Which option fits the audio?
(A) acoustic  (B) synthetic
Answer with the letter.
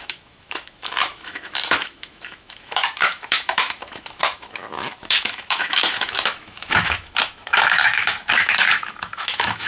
B